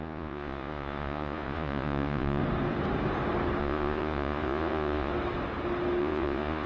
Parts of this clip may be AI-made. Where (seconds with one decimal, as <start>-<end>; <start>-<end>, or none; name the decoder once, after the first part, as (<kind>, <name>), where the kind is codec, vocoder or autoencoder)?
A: 0.0-2.4 (vocoder, Vocos); 3.6-5.1; 6.0-6.7